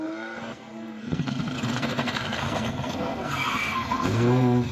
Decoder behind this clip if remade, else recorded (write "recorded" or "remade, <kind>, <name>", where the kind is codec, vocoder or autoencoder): remade, codec, SNAC